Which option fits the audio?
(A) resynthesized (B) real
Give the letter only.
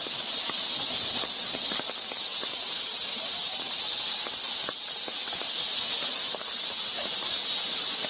B